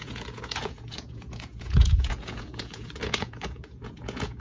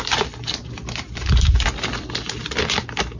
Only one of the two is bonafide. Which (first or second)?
second